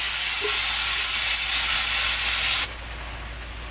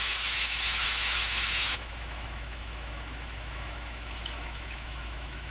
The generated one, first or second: second